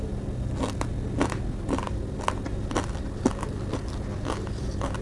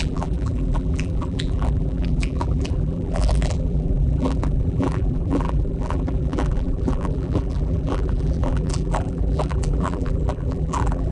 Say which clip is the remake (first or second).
second